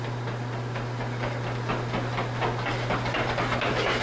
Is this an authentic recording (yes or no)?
yes